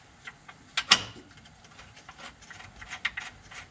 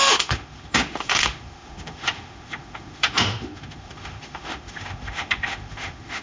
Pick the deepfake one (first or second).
second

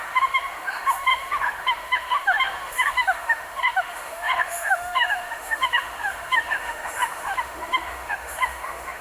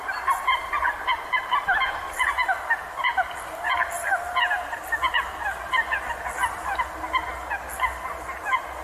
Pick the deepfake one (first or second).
first